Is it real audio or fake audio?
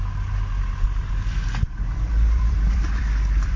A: fake